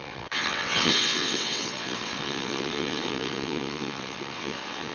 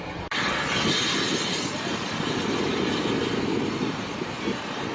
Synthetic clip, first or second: first